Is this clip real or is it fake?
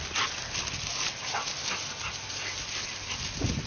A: real